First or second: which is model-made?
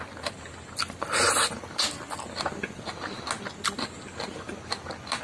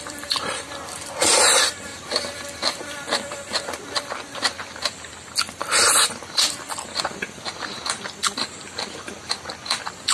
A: second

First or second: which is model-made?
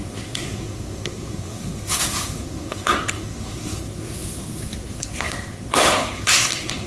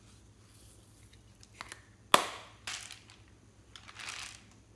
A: first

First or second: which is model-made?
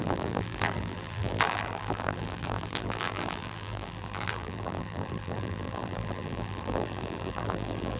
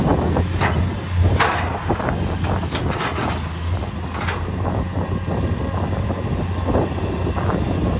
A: first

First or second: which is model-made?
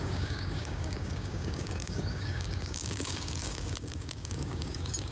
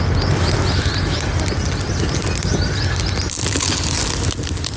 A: first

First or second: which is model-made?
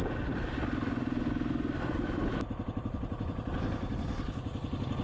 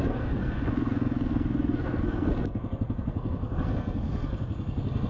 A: second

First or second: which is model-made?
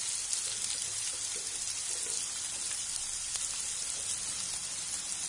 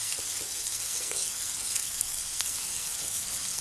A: second